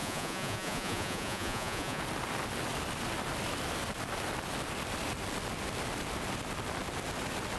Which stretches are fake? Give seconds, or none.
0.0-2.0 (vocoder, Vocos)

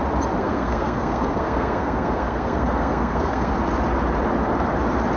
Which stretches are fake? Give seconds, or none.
0.4-3.5 (codec, SNAC)